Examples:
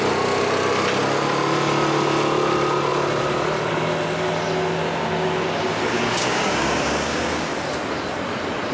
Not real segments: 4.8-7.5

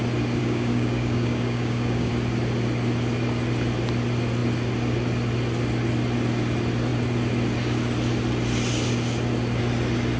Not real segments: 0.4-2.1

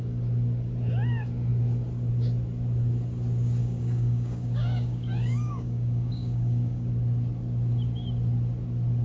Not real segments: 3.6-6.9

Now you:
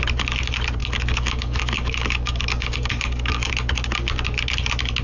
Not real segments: 0.8-3.5

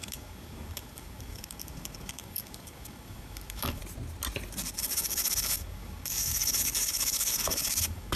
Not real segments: 0.0-3.8; 4.8-8.2

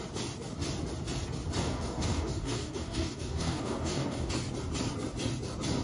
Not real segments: 1.6-4.3

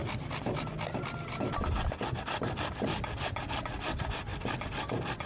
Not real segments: none